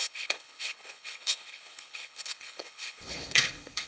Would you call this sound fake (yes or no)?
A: yes